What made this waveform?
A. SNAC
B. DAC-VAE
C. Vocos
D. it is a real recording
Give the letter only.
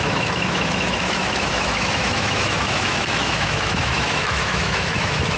B